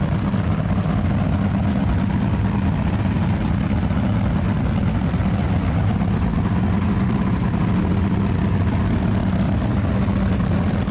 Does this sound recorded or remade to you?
recorded